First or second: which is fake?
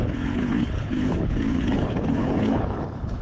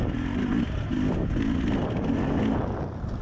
first